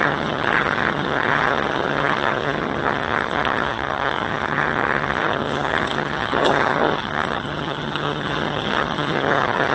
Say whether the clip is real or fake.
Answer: fake